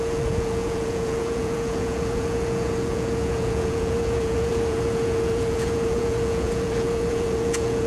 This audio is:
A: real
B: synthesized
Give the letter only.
B